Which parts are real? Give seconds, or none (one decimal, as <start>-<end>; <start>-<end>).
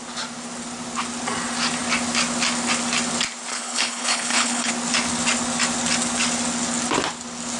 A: 0.0-3.5; 4.7-7.6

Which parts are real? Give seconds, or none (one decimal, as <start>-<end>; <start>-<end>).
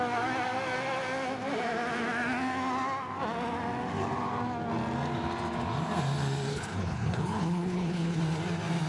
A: 0.0-6.5; 8.2-8.9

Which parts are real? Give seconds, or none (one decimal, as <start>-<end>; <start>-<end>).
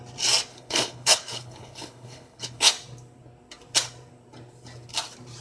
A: 0.0-0.5; 2.7-5.4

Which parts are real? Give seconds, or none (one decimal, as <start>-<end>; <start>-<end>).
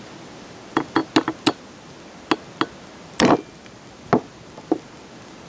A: 0.0-5.5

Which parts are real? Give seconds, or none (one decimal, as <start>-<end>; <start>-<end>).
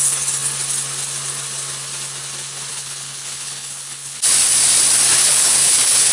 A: 0.0-2.7; 4.2-5.2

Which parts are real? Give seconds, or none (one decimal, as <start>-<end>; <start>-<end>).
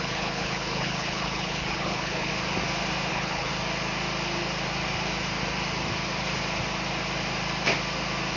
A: 2.3-3.1; 3.5-8.4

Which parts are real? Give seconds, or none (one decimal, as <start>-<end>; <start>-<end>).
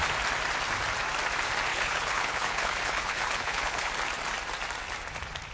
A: 0.0-1.7; 3.9-5.5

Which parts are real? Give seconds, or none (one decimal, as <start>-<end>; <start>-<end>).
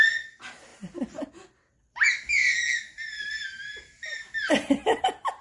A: 0.0-5.4